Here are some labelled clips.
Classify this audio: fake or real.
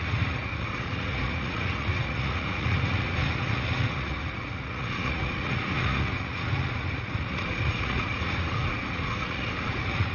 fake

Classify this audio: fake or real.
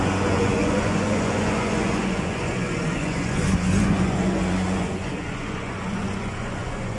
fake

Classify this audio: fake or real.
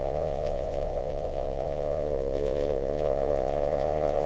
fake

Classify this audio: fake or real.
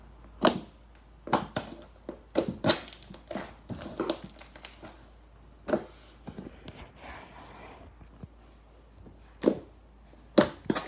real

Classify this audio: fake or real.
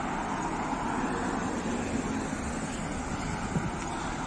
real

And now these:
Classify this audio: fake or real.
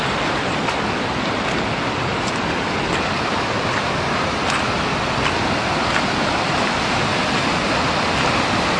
real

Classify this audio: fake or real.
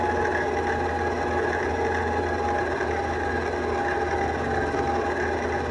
real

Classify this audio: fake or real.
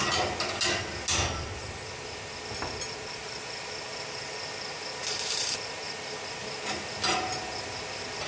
real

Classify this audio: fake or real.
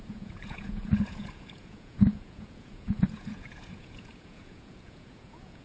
fake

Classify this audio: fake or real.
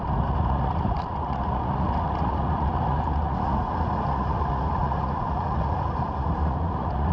fake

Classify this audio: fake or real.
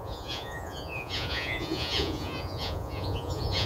fake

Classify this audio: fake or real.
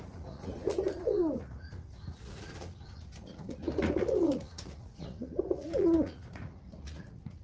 fake